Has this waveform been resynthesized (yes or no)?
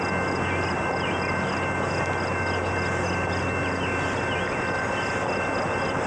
no